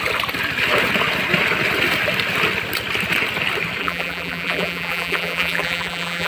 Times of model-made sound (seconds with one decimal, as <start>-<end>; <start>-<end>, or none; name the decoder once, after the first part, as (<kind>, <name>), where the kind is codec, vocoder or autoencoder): 3.8-6.3 (vocoder, BigVGAN v2)